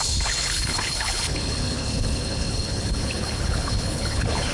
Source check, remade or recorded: remade